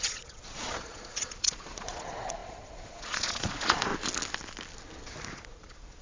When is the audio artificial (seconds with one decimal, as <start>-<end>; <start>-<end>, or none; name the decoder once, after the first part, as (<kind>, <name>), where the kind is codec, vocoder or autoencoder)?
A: 0.0-3.9 (vocoder, Vocos); 5.3-6.0